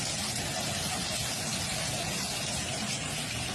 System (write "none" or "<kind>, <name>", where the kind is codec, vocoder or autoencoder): none